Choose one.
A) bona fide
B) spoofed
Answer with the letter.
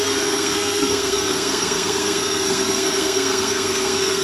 B